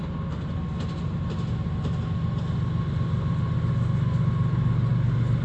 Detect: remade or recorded recorded